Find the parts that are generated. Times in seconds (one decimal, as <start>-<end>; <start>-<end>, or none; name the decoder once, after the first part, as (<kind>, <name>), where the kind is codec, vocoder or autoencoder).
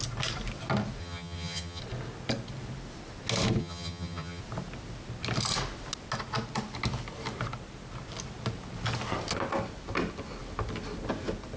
1.0-1.8 (vocoder, HiFi-GAN); 3.6-4.4